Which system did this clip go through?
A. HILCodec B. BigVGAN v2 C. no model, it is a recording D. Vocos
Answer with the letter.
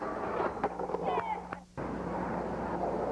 C